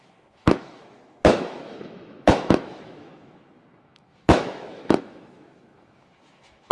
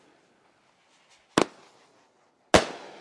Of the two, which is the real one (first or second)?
second